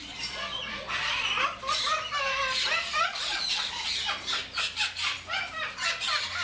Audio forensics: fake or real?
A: fake